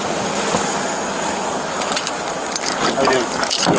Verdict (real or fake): real